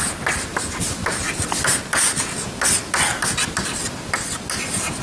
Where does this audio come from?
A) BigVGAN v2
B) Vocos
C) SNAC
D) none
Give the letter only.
D